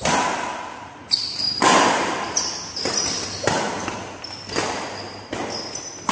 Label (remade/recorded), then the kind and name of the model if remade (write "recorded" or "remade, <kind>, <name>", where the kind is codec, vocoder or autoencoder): recorded